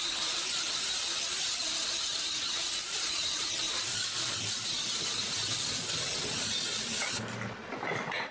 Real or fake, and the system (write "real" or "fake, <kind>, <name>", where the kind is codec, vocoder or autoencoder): real